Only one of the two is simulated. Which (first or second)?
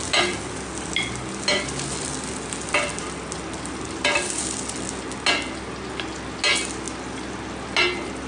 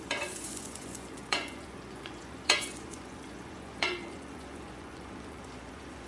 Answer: second